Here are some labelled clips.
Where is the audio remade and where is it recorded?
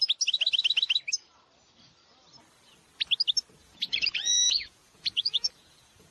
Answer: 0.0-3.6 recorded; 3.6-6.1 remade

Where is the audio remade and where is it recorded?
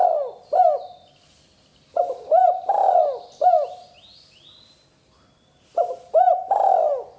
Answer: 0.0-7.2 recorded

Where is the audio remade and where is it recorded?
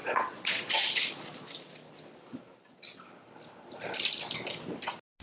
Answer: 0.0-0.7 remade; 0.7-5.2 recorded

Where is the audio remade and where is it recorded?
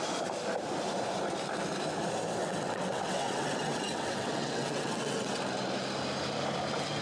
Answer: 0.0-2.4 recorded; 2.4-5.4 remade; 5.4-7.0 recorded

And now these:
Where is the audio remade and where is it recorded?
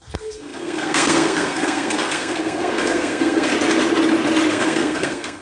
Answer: 0.0-3.5 remade; 3.5-4.5 recorded; 4.5-5.4 remade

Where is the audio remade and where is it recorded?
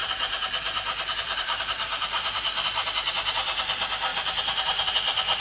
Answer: 0.0-2.4 remade; 2.4-4.1 recorded; 4.1-4.9 remade; 4.9-5.4 recorded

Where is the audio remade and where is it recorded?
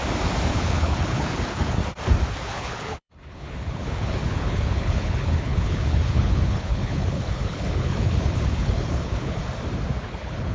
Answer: 0.0-0.5 recorded; 0.5-1.8 remade; 1.8-2.3 recorded; 2.3-9.4 remade; 9.4-10.0 recorded; 10.0-10.5 remade